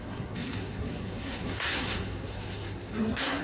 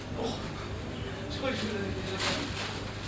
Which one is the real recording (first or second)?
second